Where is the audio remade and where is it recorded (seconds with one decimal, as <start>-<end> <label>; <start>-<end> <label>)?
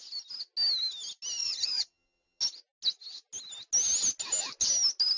0.0-1.4 recorded; 1.4-2.4 remade; 2.4-5.2 recorded